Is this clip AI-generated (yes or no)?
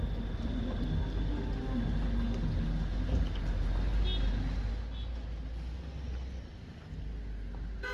no